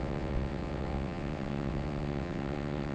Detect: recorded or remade remade